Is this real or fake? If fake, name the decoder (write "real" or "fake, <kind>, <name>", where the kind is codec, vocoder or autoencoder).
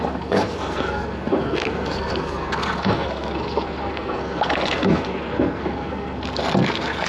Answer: fake, codec, SNAC